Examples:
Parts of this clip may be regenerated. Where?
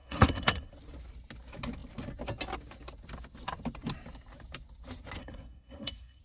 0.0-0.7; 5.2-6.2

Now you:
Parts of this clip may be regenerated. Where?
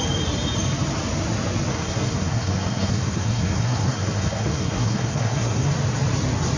1.7-5.7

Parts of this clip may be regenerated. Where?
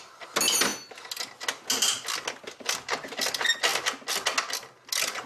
none